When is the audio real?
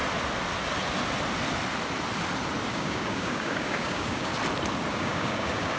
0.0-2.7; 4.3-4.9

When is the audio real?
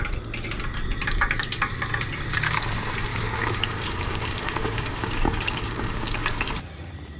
0.0-3.1; 6.5-7.2